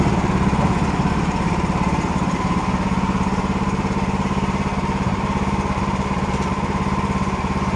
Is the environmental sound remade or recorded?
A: remade